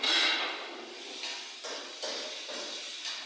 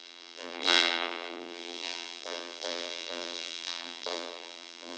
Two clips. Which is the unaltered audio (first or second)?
first